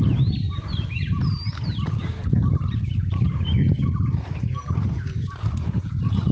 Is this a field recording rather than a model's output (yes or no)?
no